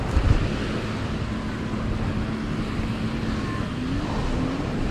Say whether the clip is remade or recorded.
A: recorded